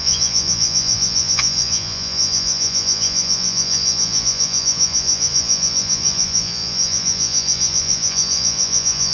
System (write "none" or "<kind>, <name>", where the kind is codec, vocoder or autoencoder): vocoder, Vocos